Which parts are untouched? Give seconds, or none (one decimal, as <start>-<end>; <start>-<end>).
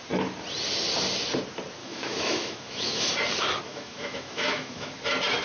0.0-1.8; 3.1-3.7; 4.9-5.4